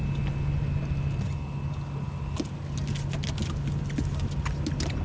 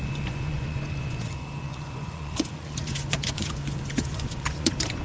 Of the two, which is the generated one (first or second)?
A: second